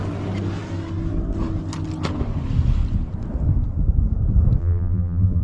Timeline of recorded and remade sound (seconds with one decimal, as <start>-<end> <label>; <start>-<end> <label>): 0.0-4.6 recorded; 4.6-5.4 remade